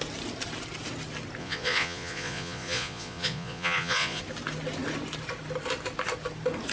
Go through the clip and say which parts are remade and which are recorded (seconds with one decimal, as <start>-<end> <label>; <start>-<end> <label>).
0.0-1.4 recorded; 1.4-4.2 remade; 4.2-6.7 recorded